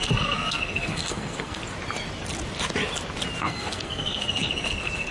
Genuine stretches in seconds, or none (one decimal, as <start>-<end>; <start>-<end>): 1.6-3.4